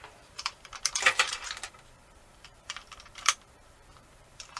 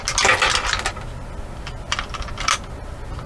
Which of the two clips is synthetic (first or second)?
first